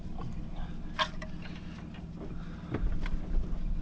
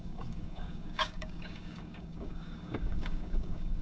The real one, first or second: first